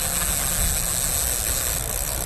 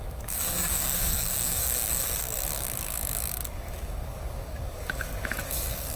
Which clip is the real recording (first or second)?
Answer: first